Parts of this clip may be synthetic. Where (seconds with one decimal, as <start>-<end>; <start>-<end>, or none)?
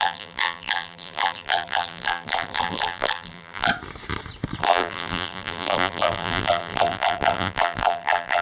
0.0-3.7; 4.6-8.4